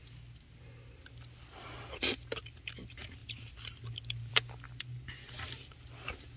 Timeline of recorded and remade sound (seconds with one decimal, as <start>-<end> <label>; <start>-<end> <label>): 0.0-6.4 recorded